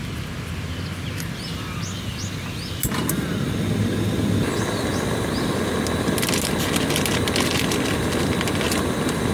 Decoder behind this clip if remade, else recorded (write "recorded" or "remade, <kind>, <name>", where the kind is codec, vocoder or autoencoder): recorded